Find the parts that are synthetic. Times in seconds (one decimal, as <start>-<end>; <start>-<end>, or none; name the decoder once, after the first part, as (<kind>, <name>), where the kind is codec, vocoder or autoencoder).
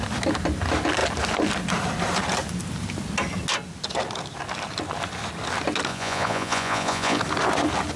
5.9-7.2 (vocoder, Vocos)